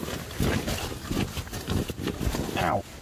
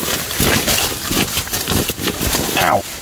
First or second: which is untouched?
first